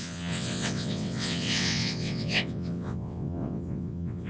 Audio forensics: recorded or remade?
remade